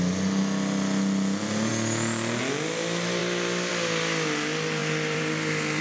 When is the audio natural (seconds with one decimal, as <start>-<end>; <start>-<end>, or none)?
0.0-4.8